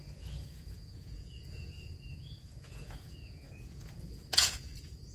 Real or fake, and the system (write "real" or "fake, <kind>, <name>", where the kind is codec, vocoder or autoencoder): fake, vocoder, Vocos